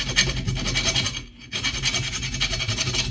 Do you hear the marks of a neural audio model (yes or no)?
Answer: no